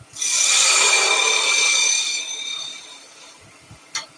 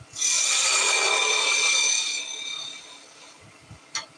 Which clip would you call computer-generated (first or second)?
first